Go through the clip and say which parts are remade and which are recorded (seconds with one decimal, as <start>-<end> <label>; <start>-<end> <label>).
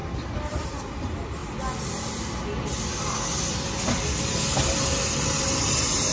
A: 0.0-6.1 recorded